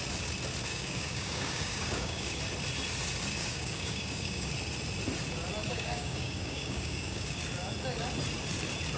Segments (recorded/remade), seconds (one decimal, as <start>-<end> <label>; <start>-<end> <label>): 0.0-0.7 recorded; 0.7-2.4 remade; 2.4-3.4 recorded; 3.4-4.5 remade; 4.5-5.7 recorded; 5.7-7.4 remade; 7.4-9.0 recorded